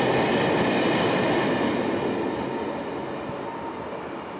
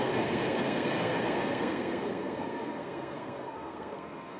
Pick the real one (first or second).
first